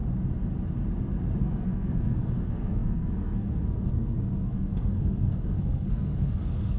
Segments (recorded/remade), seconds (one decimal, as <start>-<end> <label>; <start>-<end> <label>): 0.0-1.4 recorded; 1.4-6.8 remade

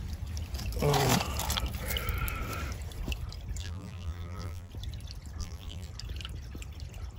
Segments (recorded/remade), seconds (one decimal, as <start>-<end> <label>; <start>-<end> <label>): 0.0-3.6 recorded; 3.6-4.7 remade; 4.7-5.4 recorded; 5.4-5.9 remade; 5.9-7.2 recorded

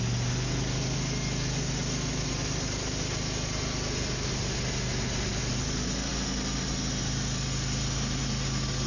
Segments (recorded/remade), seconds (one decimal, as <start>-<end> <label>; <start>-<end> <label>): 0.0-8.9 recorded

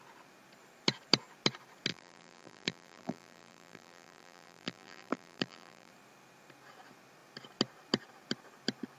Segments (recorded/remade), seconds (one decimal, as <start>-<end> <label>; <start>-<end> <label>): 0.0-1.9 recorded; 1.9-5.9 remade; 5.9-9.0 recorded

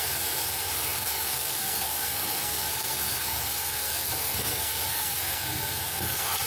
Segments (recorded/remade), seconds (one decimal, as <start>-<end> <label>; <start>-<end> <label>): 0.0-6.5 remade